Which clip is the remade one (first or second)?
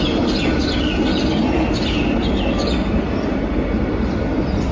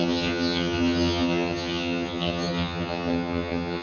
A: second